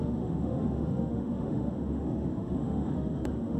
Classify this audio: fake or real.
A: fake